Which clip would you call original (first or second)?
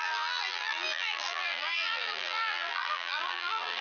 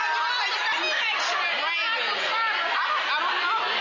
second